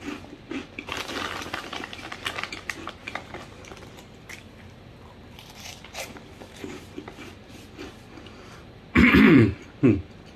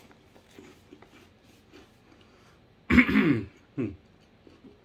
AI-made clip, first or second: first